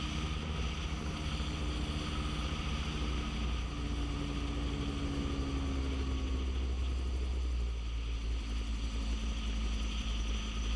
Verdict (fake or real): real